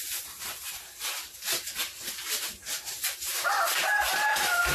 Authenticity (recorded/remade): remade